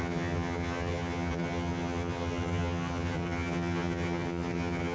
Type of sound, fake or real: fake